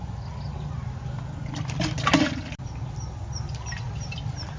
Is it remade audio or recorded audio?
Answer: recorded